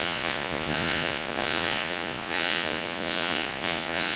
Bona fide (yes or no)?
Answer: no